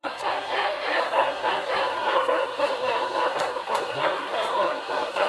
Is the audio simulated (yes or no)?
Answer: yes